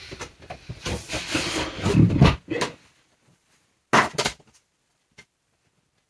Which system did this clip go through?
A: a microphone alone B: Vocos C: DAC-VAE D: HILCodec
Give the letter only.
A